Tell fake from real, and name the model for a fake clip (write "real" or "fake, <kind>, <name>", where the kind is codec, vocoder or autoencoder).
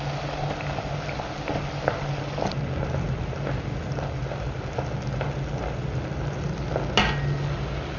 real